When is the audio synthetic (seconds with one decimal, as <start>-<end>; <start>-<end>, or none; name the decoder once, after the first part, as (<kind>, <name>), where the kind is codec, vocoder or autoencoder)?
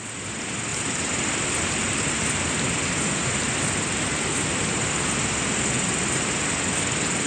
none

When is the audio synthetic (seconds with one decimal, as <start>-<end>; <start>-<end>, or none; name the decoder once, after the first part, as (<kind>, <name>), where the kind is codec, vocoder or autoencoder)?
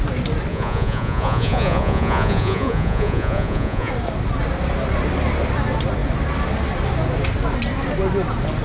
0.5-3.9 (vocoder, Vocos)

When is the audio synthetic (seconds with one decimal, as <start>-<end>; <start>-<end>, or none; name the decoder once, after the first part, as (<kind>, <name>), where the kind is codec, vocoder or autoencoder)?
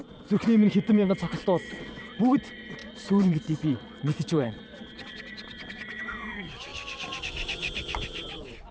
0.0-6.7 (vocoder, Vocos); 7.2-8.7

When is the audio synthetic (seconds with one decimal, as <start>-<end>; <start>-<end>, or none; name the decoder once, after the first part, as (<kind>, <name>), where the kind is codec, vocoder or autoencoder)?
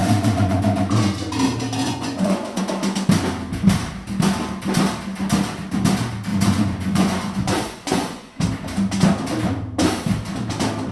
0.0-0.6 (vocoder, Vocos); 1.8-2.6; 6.3-8.3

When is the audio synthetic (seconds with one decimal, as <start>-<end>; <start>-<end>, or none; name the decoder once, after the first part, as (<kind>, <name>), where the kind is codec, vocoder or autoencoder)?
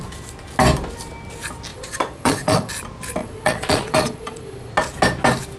1.7-2.7 (vocoder, Vocos); 3.2-4.7